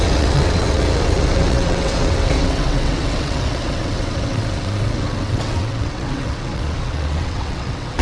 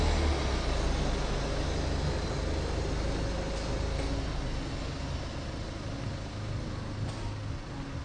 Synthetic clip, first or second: first